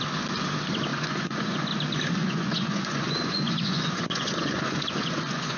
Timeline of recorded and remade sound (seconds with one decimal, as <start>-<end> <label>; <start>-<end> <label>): 0.0-0.9 recorded; 0.9-1.7 remade; 1.7-2.2 recorded; 2.2-5.6 remade